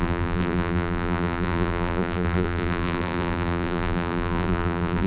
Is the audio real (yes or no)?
no